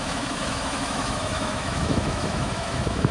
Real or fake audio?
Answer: fake